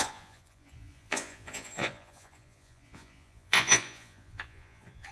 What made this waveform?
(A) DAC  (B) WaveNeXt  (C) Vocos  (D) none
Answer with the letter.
C